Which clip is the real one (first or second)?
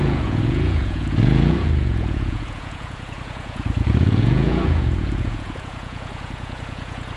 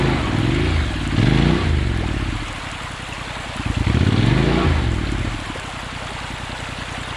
second